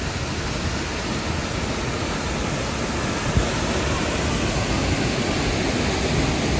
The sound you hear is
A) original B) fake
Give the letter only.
A